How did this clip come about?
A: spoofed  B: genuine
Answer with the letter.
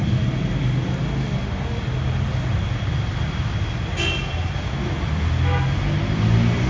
B